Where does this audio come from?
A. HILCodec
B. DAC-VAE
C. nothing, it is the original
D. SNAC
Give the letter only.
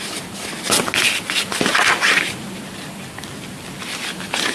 C